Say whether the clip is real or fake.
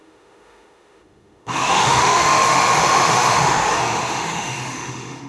fake